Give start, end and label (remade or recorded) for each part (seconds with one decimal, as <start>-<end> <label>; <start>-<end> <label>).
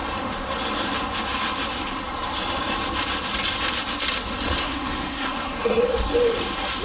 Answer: 0.0-4.6 recorded; 4.6-5.8 remade; 5.8-6.8 recorded